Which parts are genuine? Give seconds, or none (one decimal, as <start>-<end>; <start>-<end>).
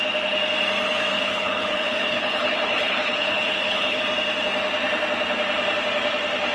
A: 0.0-1.1; 4.0-6.5